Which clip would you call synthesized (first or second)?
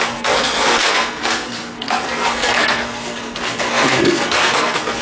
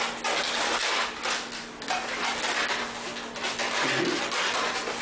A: first